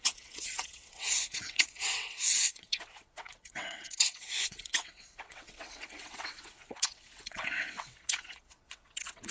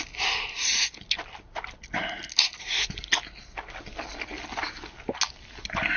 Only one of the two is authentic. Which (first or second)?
second